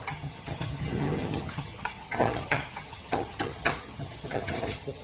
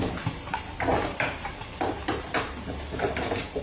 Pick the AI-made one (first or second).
first